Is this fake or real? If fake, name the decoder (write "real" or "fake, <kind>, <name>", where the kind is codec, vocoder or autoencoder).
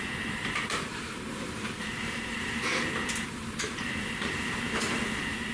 fake, vocoder, BigVGAN v2